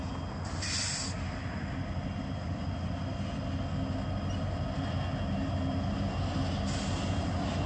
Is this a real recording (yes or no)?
yes